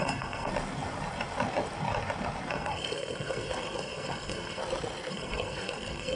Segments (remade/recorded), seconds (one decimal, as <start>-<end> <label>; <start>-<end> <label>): 0.0-0.5 remade; 0.5-2.5 recorded; 2.5-4.6 remade; 4.6-5.1 recorded; 5.1-6.2 remade